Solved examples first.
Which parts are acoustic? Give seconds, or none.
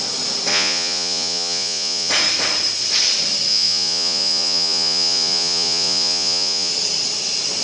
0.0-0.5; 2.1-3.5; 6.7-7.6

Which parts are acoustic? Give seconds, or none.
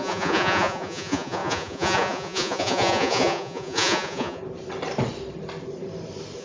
4.4-6.4